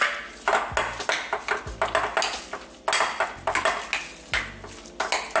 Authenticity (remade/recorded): recorded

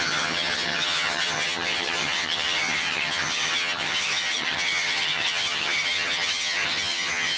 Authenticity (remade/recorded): remade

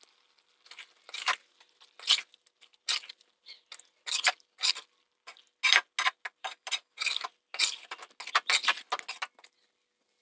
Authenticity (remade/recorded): recorded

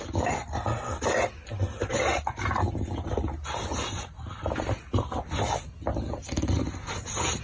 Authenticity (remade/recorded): recorded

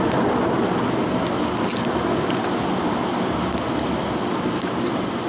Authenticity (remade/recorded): recorded